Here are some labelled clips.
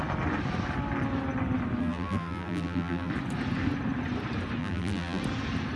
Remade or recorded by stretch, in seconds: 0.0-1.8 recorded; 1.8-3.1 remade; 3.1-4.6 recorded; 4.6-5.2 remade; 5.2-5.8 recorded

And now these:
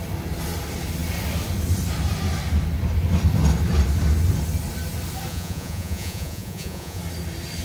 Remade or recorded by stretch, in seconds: 0.0-5.3 recorded; 5.3-7.0 remade; 7.0-7.6 recorded

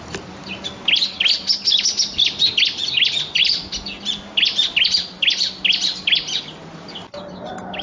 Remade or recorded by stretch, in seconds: 0.0-7.8 recorded

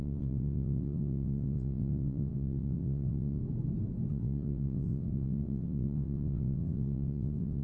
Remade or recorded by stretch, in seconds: 0.0-3.4 remade; 3.4-4.1 recorded; 4.1-7.6 remade